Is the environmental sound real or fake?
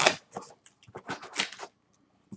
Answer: real